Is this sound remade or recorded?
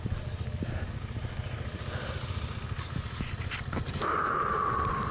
recorded